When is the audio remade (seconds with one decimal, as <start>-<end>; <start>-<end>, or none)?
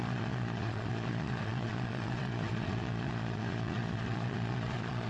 0.0-5.1